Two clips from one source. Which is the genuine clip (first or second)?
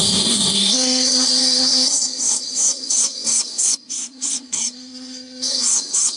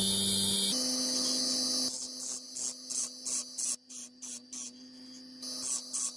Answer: second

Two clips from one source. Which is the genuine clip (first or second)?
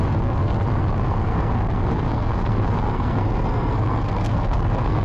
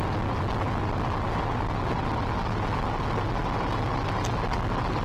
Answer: second